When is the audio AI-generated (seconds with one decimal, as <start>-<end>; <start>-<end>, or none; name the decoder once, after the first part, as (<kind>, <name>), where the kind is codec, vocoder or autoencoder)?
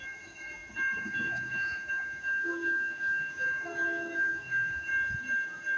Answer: 0.0-4.9 (autoencoder, DAC-VAE)